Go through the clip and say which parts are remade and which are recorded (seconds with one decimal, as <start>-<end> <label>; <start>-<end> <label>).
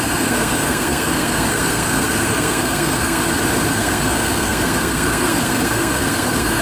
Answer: 0.0-3.2 remade; 3.2-3.7 recorded; 3.7-6.6 remade